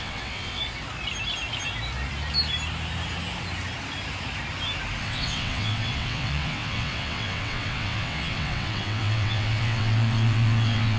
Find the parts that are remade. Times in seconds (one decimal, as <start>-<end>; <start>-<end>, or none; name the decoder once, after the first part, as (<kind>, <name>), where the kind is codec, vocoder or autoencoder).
0.0-0.6 (vocoder, WaveNeXt); 5.0-11.0